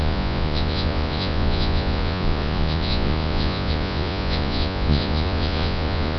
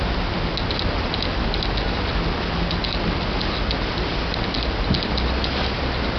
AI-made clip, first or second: first